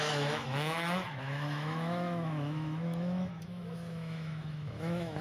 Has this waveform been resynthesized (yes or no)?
yes